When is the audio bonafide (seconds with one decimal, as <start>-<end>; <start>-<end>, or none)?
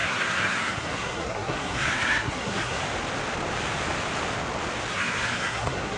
2.8-4.9